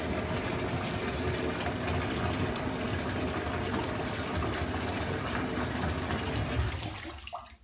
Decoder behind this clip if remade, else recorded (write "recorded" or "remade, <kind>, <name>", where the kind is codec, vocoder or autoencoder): recorded